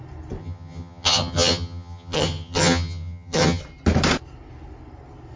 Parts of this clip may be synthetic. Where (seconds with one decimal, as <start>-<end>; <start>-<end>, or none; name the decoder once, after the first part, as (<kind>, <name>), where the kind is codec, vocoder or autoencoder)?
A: 0.4-3.6 (vocoder, HiFi-GAN)